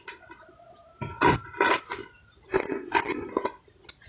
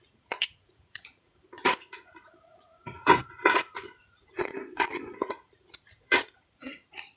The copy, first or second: second